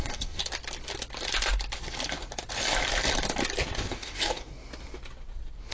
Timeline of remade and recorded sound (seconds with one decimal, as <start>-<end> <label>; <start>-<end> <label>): 0.0-0.4 remade; 0.4-3.8 recorded; 3.8-4.5 remade; 4.5-5.7 recorded